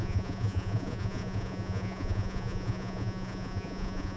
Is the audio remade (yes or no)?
yes